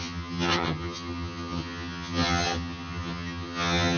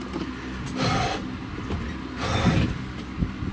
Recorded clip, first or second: second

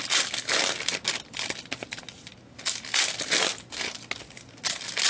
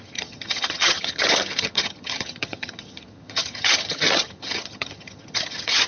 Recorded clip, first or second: first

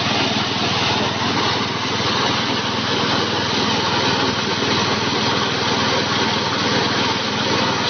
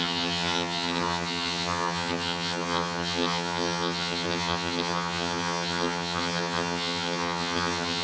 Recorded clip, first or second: first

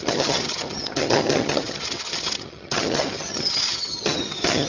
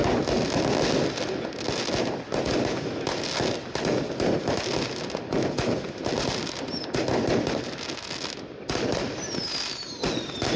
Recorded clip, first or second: second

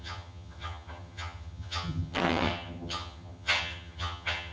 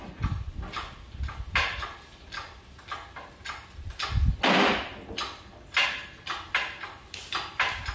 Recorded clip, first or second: second